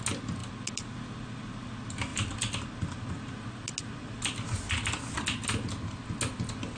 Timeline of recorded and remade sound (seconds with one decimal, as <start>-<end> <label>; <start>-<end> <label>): 0.0-6.8 recorded